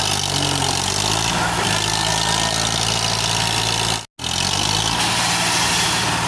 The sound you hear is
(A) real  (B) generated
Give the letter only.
A